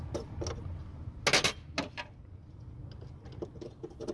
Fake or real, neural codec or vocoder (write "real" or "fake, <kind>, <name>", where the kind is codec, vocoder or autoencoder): real